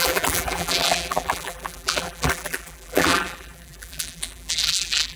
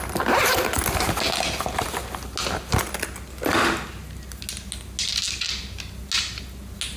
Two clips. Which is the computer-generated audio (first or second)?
first